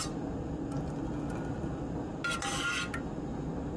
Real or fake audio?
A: real